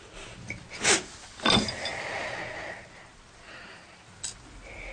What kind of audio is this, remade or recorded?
recorded